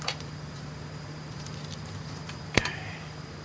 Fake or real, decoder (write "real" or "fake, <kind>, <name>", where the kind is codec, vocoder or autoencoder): fake, vocoder, BigVGAN v2